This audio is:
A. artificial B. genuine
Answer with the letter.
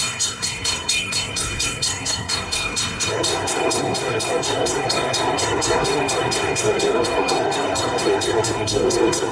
A